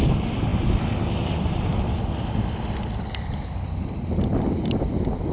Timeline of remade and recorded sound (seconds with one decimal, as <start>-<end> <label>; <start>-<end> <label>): 0.0-5.3 recorded